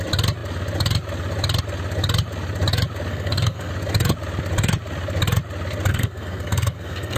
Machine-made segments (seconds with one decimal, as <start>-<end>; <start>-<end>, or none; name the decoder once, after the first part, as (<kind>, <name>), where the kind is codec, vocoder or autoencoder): 3.1-3.7 (codec, SNAC); 5.9-7.2